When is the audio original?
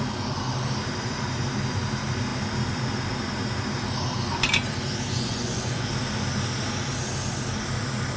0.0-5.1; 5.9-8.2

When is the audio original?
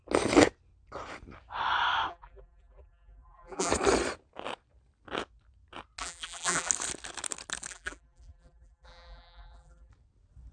0.0-2.1; 3.7-6.0; 6.7-7.7; 9.9-10.5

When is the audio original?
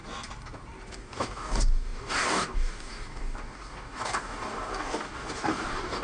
0.0-0.9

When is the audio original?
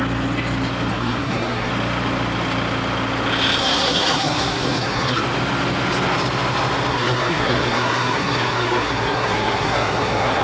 0.0-0.9; 1.7-3.6; 5.2-6.9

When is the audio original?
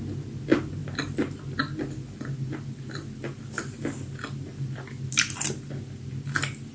0.0-6.7